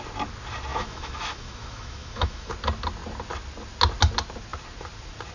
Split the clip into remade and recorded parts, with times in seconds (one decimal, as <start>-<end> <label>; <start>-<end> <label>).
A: 0.0-0.7 recorded; 0.7-2.5 remade; 2.5-5.3 recorded